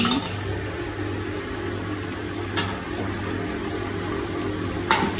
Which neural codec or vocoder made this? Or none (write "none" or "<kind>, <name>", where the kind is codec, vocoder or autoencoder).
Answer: none